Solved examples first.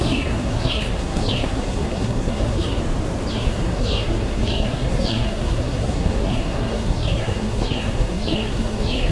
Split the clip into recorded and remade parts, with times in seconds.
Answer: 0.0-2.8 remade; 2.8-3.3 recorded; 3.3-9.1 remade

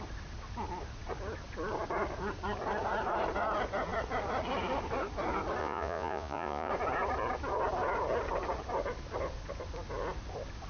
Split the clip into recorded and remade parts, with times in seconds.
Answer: 0.0-5.6 recorded; 5.6-6.7 remade; 6.7-10.7 recorded

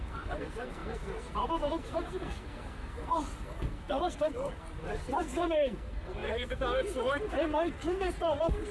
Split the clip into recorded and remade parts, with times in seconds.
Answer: 0.0-8.7 remade

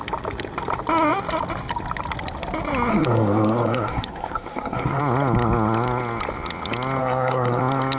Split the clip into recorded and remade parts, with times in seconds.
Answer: 0.0-2.9 recorded; 2.9-5.0 remade; 5.0-7.0 recorded; 7.0-7.6 remade; 7.6-8.0 recorded